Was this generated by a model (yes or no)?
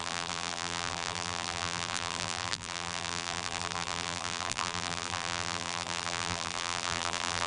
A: yes